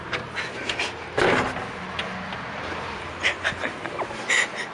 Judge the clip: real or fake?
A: real